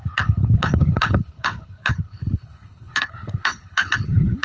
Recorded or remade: remade